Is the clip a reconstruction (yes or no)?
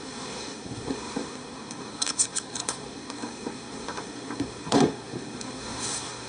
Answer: yes